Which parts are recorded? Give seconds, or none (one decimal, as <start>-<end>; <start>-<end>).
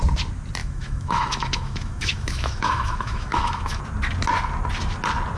0.0-0.6; 3.8-5.4